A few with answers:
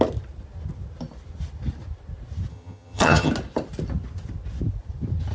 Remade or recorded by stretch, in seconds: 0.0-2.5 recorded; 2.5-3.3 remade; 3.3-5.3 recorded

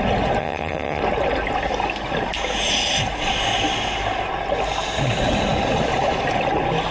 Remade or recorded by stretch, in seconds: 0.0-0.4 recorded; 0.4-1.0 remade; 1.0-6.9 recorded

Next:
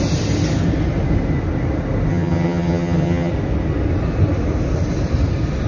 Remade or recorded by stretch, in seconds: 0.0-2.1 recorded; 2.1-3.3 remade; 3.3-5.7 recorded